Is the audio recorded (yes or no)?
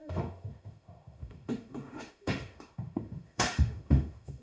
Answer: no